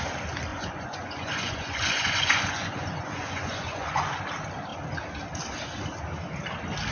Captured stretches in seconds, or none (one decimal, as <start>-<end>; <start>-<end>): 0.0-0.5; 4.2-6.9